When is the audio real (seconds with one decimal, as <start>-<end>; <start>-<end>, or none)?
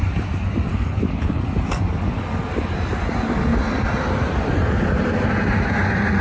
0.0-0.7; 1.4-6.2